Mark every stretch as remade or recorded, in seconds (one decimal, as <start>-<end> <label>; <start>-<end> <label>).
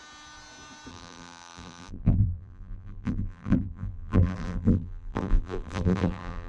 0.0-0.9 recorded; 0.9-6.5 remade